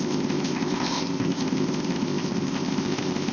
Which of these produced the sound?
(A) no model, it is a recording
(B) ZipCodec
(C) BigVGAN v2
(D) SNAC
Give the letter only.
B